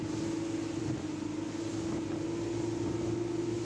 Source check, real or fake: real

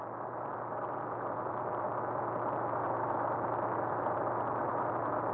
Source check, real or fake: real